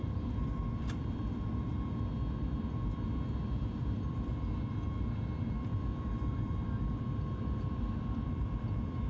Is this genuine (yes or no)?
no